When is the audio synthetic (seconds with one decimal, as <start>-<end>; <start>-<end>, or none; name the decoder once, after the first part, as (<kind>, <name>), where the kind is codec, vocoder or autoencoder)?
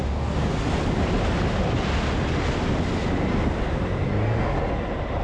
0.0-0.5 (codec, DAC)